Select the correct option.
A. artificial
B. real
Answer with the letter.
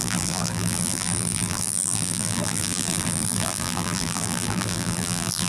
A